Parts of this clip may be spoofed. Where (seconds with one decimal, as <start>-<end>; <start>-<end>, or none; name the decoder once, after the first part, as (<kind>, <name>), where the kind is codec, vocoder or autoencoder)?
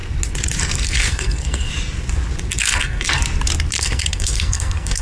0.6-1.7 (codec, SNAC); 2.6-3.2; 3.8-5.0